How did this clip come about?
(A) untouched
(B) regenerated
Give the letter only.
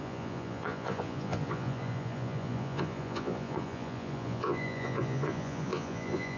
B